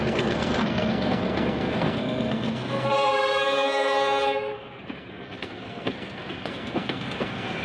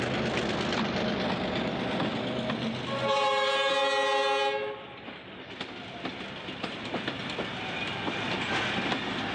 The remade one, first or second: first